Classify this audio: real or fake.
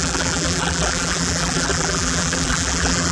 fake